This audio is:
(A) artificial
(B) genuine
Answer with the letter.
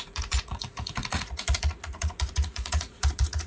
A